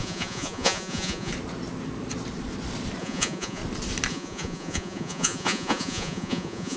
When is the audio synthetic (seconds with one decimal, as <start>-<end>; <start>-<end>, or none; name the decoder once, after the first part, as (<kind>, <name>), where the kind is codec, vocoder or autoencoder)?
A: 0.0-1.3 (vocoder, Vocos); 3.0-3.6; 4.1-6.8

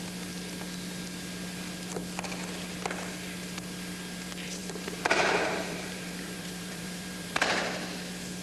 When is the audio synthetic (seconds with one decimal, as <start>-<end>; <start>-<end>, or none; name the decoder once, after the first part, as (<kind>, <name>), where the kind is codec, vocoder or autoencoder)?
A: 4.6-7.6 (vocoder, BigVGAN v2)

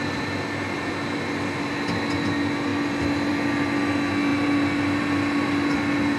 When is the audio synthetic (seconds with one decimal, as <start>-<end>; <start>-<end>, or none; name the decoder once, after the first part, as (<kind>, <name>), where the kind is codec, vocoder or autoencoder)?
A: none

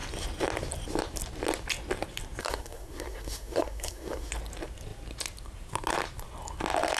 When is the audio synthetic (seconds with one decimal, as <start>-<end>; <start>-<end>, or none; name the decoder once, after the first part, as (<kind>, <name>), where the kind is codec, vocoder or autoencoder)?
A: 2.4-4.3 (codec, SNAC)

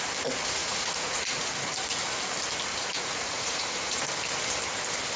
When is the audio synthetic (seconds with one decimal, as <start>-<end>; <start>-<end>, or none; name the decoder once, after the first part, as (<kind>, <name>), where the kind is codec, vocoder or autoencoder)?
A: 0.6-1.5 (vocoder, Vocos); 2.7-4.0

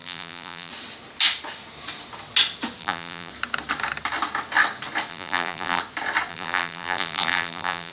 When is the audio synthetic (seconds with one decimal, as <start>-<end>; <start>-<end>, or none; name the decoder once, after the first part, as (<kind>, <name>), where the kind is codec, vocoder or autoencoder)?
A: 0.0-0.7 (vocoder, BigVGAN v2); 2.8-3.3; 5.1-5.8; 6.3-7.9